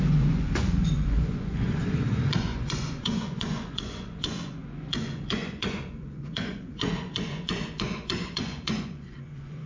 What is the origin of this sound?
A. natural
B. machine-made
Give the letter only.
B